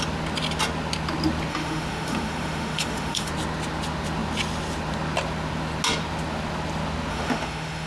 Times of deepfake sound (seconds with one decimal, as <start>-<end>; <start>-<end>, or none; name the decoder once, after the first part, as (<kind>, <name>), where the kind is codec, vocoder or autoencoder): 1.5-3.3 (autoencoder, DAC-VAE); 7.1-7.9